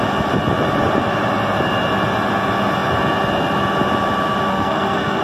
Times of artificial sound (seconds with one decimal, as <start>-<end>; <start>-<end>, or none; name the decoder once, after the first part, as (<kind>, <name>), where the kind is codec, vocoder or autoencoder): 4.5-5.2 (codec, SNAC)